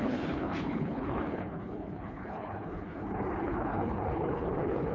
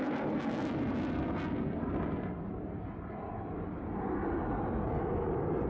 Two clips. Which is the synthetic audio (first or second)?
first